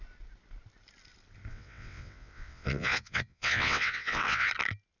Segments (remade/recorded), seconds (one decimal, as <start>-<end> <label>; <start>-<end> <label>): 0.0-1.5 recorded; 1.5-4.5 remade; 4.5-5.0 recorded